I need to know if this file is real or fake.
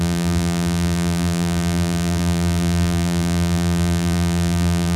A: fake